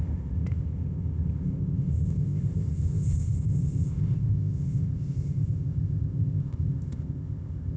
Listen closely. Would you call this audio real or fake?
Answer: fake